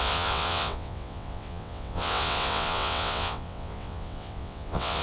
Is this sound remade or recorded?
remade